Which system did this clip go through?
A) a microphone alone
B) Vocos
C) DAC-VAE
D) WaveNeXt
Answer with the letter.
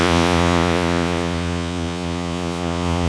B